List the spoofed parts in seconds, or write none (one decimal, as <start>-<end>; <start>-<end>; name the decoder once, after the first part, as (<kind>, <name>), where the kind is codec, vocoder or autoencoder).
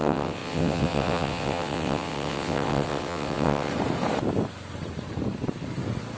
0.0-3.7 (vocoder, WaveNeXt)